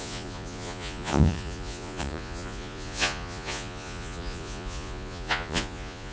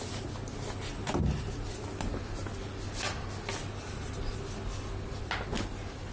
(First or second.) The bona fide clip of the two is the second